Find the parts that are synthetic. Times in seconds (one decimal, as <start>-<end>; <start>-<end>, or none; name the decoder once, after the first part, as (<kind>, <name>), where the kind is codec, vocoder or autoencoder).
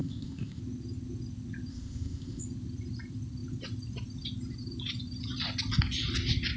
0.0-0.6 (codec, ZipCodec); 1.7-2.4